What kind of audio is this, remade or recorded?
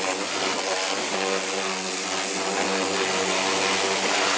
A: recorded